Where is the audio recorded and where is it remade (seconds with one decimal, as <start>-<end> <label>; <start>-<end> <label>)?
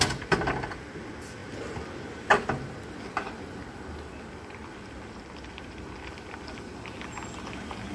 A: 0.0-7.9 recorded